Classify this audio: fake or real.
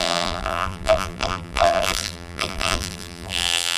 fake